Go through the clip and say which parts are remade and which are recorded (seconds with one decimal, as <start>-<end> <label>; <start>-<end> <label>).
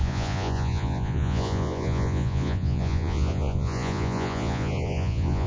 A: 0.0-5.5 remade